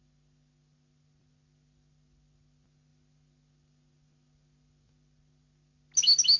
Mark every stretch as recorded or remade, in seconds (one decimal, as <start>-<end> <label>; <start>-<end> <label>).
0.0-6.4 recorded